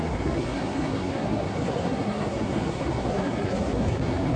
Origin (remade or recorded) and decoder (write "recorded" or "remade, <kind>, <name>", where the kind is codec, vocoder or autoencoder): remade, codec, SNAC